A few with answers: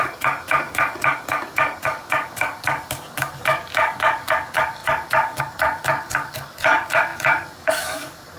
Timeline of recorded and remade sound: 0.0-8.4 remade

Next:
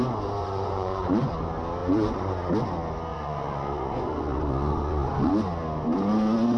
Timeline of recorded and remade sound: 0.0-0.4 recorded; 0.4-1.3 remade; 1.3-1.8 recorded; 1.8-2.5 remade; 2.5-3.1 recorded; 3.1-5.3 remade; 5.3-6.6 recorded

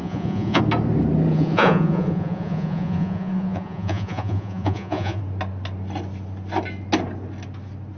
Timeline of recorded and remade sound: 0.0-0.6 remade; 0.6-1.3 recorded; 1.3-5.2 remade; 5.2-8.0 recorded

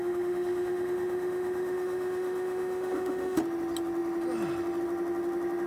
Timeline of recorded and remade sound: 0.0-3.4 remade; 3.4-5.7 recorded

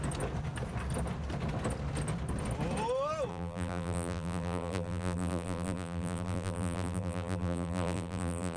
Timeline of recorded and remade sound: 0.0-3.3 recorded; 3.3-8.6 remade